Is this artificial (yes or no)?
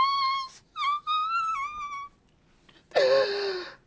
no